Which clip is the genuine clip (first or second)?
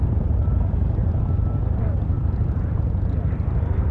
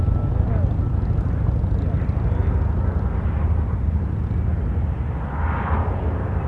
second